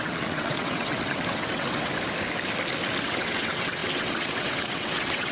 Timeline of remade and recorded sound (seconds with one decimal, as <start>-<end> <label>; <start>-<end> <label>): 0.0-1.9 remade; 1.9-3.0 recorded; 3.0-5.3 remade